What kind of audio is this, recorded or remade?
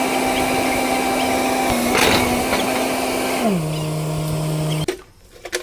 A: recorded